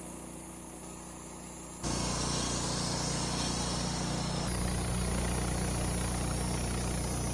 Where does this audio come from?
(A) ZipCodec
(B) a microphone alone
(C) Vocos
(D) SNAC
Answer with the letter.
B